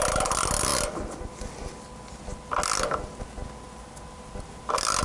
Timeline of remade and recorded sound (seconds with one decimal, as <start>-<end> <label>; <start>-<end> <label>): 0.0-5.0 recorded